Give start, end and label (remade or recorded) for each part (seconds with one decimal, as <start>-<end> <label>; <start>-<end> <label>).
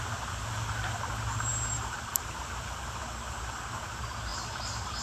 0.0-5.0 recorded